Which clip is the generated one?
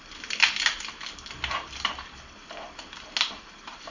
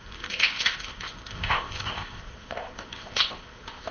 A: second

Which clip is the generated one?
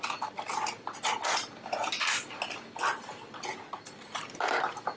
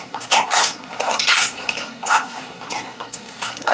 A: second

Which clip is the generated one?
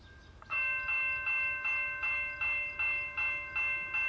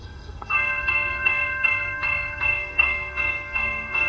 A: second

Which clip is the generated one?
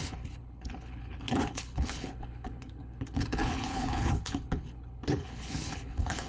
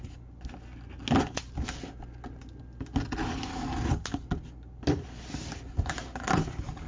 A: first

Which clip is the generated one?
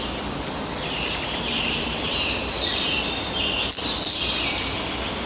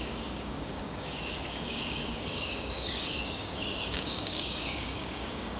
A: second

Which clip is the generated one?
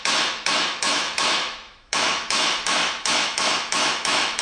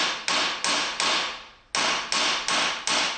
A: first